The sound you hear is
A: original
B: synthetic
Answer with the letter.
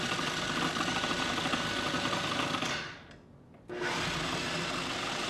A